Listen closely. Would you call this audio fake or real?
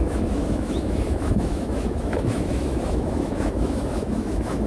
fake